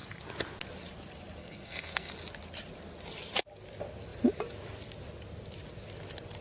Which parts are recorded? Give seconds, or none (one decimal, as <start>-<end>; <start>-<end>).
0.0-1.4; 2.1-6.4